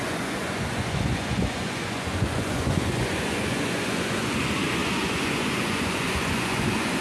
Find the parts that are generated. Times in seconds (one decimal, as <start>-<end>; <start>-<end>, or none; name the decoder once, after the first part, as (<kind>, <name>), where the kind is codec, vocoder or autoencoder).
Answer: 0.0-7.0 (vocoder, Vocos)